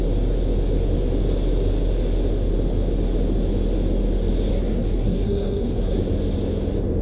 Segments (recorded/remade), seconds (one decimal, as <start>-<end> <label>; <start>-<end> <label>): 0.0-4.5 recorded; 4.5-6.0 remade; 6.0-7.0 recorded